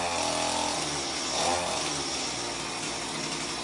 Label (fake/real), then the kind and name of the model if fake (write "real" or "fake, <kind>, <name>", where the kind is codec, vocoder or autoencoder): real